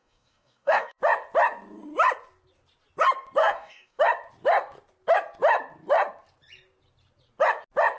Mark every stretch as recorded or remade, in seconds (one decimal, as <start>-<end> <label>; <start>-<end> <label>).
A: 0.0-1.0 remade; 1.0-3.4 recorded; 3.4-4.0 remade; 4.0-8.0 recorded